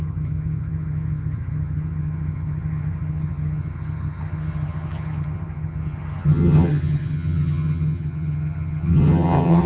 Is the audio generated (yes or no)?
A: yes